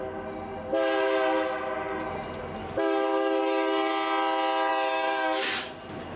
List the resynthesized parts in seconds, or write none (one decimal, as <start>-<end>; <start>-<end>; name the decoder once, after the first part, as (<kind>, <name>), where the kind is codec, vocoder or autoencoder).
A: 2.6-3.9 (codec, DAC); 4.7-5.7